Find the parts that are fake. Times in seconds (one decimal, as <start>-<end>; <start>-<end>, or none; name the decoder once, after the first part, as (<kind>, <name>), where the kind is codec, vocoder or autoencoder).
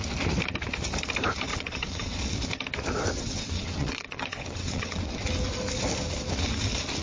1.5-2.2 (vocoder, WaveNeXt); 3.0-5.2